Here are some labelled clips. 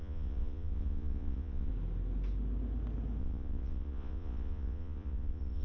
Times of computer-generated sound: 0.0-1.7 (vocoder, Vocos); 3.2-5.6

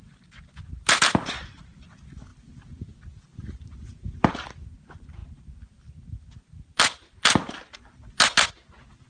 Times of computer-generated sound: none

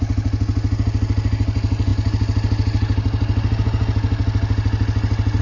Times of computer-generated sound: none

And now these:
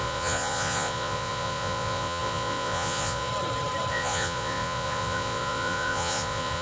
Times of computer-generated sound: 0.0-3.3 (vocoder, Vocos); 3.9-6.6

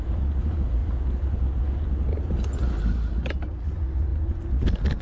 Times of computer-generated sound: none

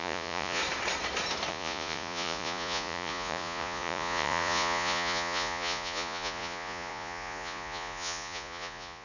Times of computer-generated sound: 0.0-0.6 (vocoder, Vocos); 1.5-9.0

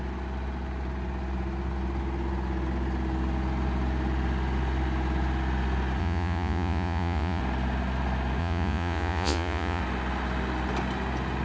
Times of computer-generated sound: 6.0-7.4 (vocoder, Vocos); 8.4-9.8

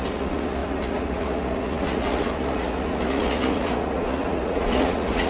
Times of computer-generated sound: 0.0-5.3 (vocoder, Vocos)